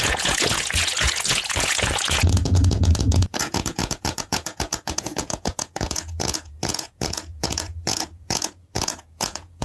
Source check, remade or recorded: remade